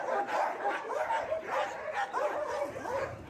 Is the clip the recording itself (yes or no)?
yes